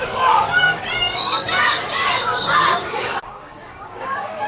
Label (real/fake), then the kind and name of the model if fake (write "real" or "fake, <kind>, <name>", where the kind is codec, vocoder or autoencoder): fake, codec, DAC